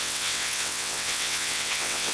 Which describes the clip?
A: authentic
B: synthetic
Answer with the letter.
B